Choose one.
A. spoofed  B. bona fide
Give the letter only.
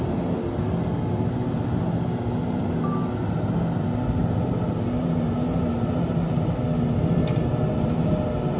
B